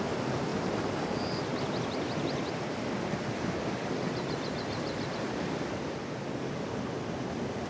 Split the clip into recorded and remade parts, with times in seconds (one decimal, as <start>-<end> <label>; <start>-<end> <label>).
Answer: 0.0-7.7 recorded

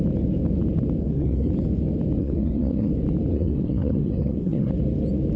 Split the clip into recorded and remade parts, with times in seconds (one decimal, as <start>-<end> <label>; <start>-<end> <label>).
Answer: 0.0-1.0 recorded; 1.0-1.5 remade; 1.5-2.2 recorded; 2.2-2.9 remade; 2.9-3.3 recorded; 3.3-4.7 remade; 4.7-5.4 recorded

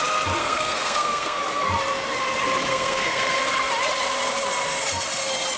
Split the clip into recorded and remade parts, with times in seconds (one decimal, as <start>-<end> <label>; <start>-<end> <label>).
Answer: 0.0-0.4 recorded; 0.4-1.4 remade; 1.4-2.7 recorded; 2.7-3.4 remade; 3.4-5.6 recorded

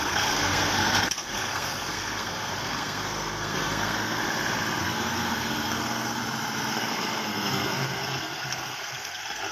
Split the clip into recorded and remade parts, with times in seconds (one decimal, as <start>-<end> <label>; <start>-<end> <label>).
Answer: 0.0-4.2 remade; 4.2-4.8 recorded; 4.8-6.2 remade; 6.2-6.7 recorded; 6.7-9.5 remade

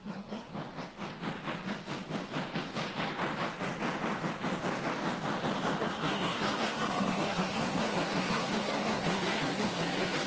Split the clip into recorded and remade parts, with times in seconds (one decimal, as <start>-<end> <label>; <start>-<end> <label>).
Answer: 0.0-0.5 remade; 0.5-5.8 recorded; 5.8-10.3 remade